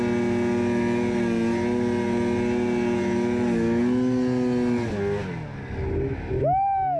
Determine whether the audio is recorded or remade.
recorded